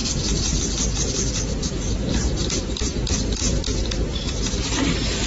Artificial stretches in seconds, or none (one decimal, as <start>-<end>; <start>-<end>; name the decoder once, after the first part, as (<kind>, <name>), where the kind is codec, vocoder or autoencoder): 0.0-0.6 (vocoder, BigVGAN v2); 1.6-2.9; 3.4-4.6